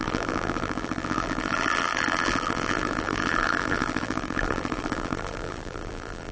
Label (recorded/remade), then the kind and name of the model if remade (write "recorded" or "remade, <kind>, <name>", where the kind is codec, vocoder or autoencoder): remade, vocoder, BigVGAN v2